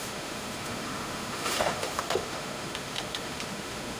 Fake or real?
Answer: fake